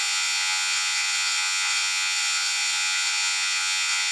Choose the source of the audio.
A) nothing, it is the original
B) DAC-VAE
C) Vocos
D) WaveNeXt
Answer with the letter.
C